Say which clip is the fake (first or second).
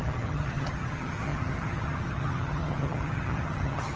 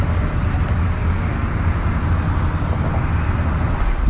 first